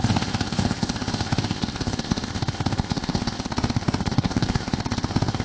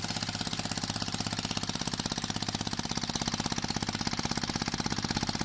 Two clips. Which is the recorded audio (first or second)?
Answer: second